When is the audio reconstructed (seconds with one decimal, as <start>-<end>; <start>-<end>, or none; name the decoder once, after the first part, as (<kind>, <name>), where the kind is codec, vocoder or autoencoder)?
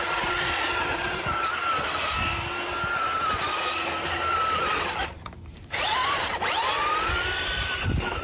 0.0-1.7 (vocoder, BigVGAN v2); 5.0-6.0; 7.1-8.2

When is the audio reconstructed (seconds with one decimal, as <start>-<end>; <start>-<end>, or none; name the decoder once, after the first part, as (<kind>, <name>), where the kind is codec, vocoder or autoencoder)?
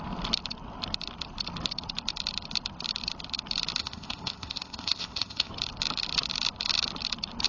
3.8-5.5 (codec, ZipCodec)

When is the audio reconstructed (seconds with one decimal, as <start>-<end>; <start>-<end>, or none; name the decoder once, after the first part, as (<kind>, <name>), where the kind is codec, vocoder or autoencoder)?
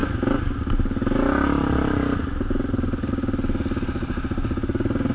none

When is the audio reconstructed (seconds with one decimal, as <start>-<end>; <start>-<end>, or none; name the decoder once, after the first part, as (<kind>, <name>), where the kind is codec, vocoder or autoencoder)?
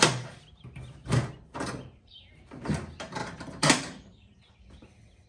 1.0-2.5 (vocoder, BigVGAN v2); 3.2-4.5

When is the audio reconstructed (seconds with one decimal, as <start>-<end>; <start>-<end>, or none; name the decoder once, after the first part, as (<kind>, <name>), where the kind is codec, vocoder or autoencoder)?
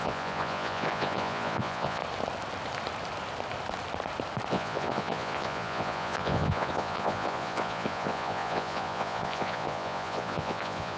0.0-2.0 (vocoder, Vocos); 4.5-11.0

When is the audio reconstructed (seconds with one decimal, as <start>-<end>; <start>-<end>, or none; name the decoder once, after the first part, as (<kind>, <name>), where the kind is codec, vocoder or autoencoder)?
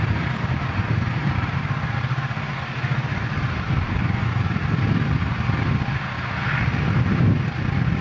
0.0-4.6 (vocoder, BigVGAN v2)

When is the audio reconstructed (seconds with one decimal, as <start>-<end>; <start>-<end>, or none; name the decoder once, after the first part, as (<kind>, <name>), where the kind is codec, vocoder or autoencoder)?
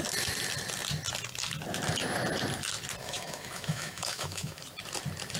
3.0-4.6 (autoencoder, DAC-VAE)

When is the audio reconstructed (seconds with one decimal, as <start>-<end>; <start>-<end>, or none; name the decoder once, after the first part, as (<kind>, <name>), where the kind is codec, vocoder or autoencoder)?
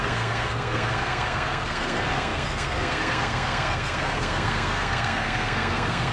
0.0-6.1 (codec, SNAC)